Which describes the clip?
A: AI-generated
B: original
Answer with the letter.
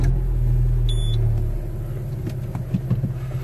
B